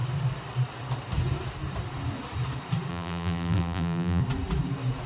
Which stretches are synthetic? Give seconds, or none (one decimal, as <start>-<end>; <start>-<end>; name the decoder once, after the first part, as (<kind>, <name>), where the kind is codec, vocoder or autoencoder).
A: 2.9-4.2 (vocoder, BigVGAN v2)